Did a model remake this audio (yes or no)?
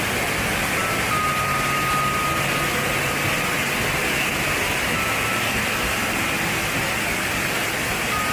no